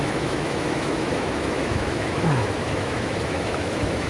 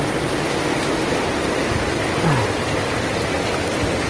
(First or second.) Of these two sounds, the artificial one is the first